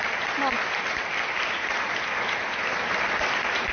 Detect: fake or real real